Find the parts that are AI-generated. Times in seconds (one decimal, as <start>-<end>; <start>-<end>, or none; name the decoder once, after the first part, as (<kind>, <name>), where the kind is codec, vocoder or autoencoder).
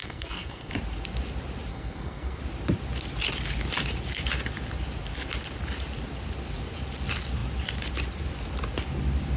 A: 0.0-0.7 (codec, SNAC); 1.7-2.4